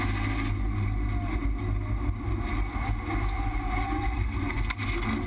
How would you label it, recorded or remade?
recorded